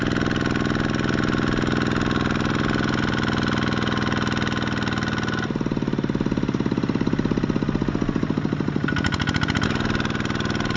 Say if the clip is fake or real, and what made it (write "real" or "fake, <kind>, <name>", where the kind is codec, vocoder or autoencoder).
real